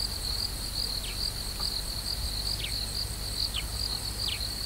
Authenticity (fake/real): real